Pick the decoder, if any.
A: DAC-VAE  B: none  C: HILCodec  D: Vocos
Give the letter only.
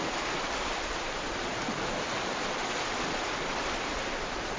B